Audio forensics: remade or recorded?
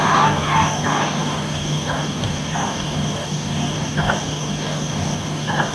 remade